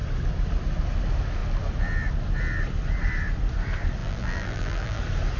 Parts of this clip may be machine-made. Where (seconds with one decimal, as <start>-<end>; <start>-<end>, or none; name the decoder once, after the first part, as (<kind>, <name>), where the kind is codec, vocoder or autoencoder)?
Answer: 4.0-5.0 (vocoder, BigVGAN v2)